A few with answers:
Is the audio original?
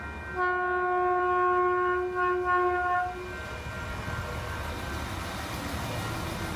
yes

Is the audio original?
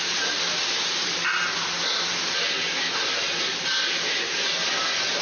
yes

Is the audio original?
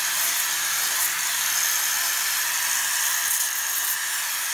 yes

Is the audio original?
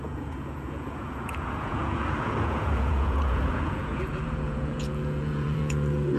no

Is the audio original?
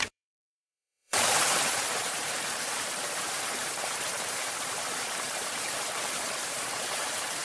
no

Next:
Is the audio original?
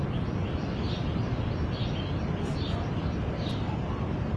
yes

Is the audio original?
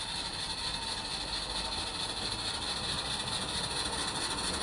yes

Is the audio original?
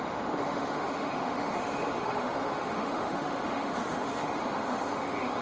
no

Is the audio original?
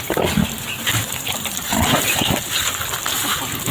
yes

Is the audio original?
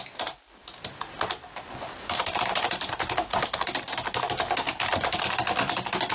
yes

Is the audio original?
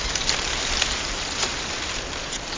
yes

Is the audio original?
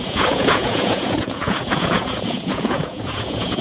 no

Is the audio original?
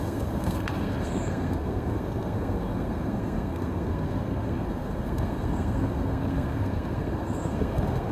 no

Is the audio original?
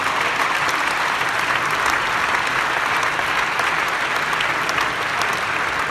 yes